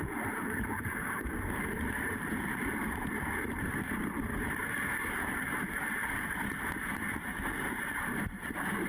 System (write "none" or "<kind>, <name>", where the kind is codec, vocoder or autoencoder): vocoder, BigVGAN v2